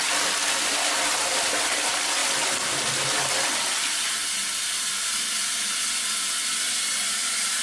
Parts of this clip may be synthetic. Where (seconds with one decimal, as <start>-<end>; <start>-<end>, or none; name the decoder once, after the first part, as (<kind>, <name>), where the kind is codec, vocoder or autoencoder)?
none